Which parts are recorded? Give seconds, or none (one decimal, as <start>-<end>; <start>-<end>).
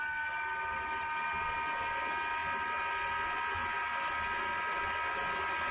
0.0-5.7